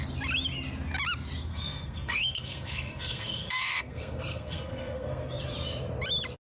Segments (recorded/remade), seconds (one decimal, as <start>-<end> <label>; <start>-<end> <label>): 0.0-1.5 recorded; 1.5-5.4 remade; 5.4-6.5 recorded